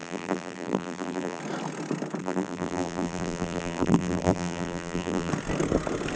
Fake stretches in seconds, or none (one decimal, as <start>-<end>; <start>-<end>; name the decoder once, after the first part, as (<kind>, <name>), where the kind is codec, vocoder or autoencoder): 0.0-1.4 (vocoder, BigVGAN v2); 2.2-5.3